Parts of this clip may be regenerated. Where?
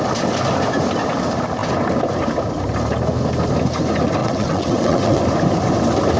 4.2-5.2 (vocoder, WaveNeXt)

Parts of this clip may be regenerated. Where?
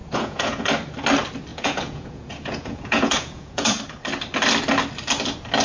0.0-0.7 (vocoder, Vocos); 1.5-3.8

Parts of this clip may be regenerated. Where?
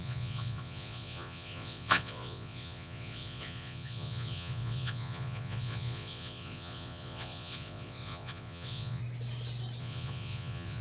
0.0-9.0 (vocoder, Vocos); 9.8-10.8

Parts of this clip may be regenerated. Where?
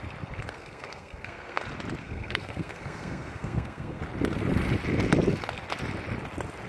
0.4-1.6 (codec, SNAC); 2.0-4.0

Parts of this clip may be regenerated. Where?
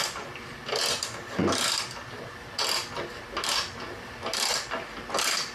none